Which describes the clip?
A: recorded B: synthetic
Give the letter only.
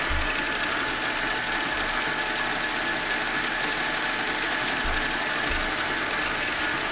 A